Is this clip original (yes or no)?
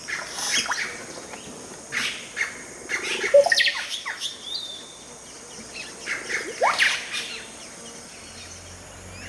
yes